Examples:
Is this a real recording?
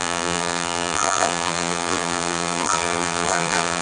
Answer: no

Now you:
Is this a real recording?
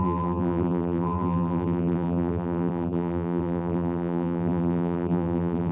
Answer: no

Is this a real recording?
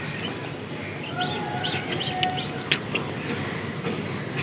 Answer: yes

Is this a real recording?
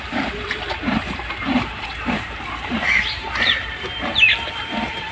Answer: no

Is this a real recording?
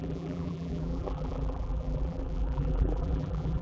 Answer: no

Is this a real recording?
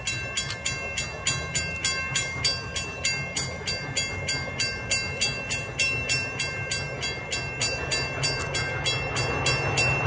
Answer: yes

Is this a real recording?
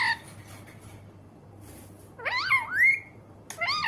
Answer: yes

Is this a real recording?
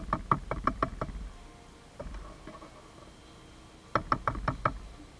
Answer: yes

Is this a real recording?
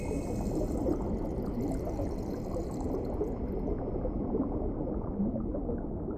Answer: yes